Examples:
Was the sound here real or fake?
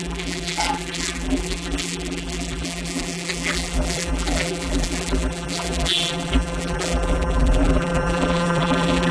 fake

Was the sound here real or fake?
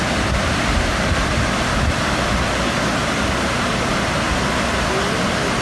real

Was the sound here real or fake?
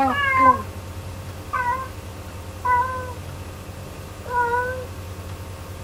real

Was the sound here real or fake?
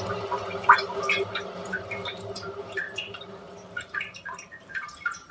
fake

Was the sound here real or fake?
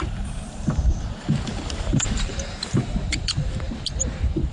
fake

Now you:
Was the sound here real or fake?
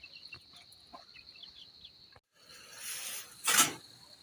real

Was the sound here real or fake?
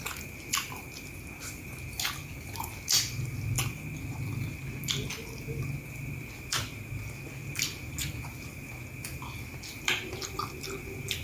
real